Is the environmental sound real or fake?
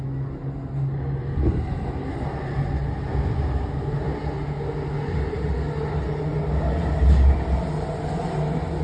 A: real